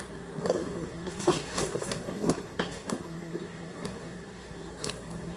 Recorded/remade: remade